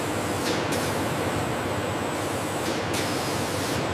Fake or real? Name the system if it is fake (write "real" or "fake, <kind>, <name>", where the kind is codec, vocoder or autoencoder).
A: real